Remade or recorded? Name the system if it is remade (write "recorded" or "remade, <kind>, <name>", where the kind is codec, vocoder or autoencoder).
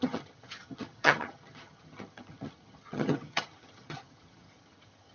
remade, vocoder, HiFi-GAN